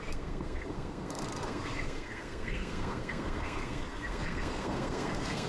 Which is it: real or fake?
fake